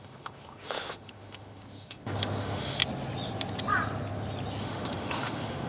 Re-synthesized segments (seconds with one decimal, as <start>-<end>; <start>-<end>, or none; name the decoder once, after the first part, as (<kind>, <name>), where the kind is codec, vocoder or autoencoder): 0.0-2.8 (autoencoder, DAC-VAE); 4.6-5.7